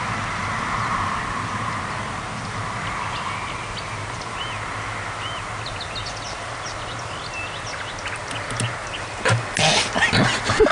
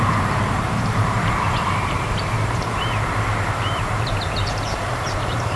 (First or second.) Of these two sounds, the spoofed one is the second